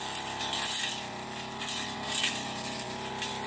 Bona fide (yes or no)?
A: yes